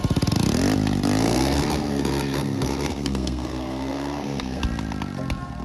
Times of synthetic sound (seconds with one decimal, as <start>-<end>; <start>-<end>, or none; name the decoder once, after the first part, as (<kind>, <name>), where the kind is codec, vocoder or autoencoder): 1.2-4.6 (codec, SNAC)